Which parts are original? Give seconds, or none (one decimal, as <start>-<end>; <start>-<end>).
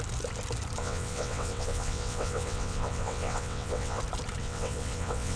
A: 0.0-0.8; 4.0-4.4